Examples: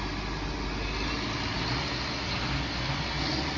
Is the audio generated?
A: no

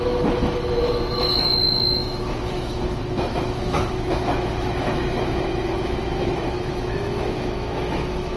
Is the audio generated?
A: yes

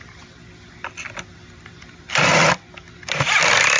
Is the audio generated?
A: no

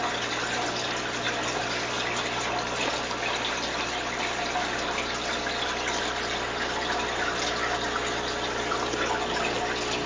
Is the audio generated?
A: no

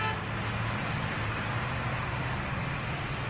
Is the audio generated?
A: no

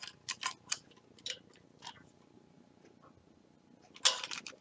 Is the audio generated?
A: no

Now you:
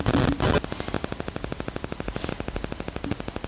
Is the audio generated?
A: no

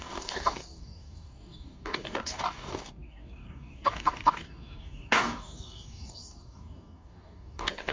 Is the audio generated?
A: yes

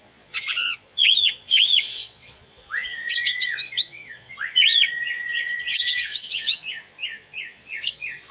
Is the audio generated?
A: yes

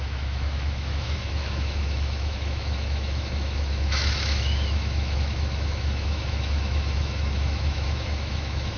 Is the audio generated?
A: yes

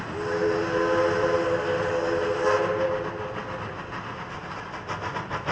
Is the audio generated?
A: no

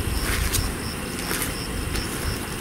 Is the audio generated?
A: no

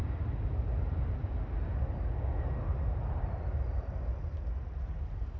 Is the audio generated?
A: no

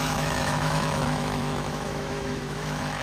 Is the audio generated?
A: yes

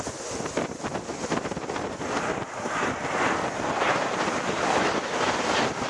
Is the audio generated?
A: no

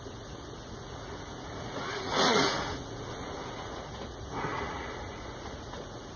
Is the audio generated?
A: yes